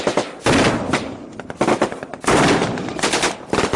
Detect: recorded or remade recorded